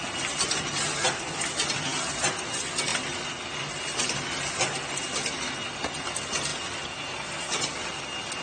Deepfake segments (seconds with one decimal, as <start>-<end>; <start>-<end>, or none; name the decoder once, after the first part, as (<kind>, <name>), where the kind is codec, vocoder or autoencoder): none